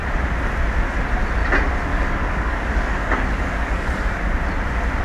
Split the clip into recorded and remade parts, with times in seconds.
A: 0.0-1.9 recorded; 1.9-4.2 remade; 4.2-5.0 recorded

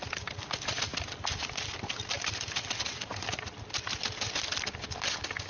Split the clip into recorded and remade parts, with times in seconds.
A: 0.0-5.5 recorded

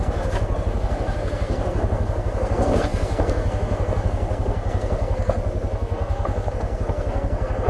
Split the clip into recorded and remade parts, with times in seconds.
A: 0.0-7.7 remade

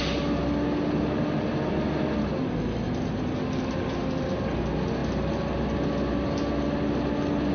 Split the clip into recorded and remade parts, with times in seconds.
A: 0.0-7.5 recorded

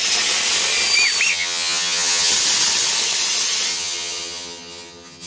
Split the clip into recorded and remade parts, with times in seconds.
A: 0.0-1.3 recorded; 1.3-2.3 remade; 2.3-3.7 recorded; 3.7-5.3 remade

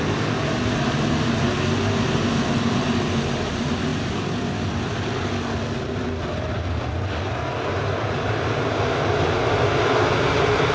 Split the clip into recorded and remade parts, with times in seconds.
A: 0.0-10.7 recorded

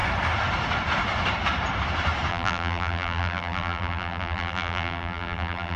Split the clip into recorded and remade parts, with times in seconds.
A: 0.0-2.3 recorded; 2.3-5.8 remade

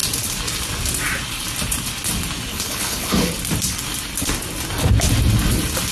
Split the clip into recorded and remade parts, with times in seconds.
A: 0.0-2.5 recorded; 2.5-3.3 remade; 3.3-5.9 recorded